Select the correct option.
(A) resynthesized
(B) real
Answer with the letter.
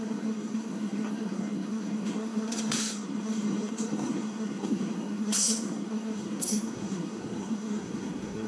A